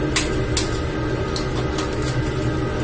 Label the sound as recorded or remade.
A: recorded